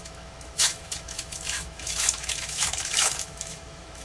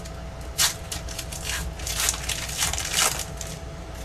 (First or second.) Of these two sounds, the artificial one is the first